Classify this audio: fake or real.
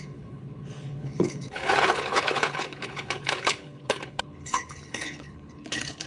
fake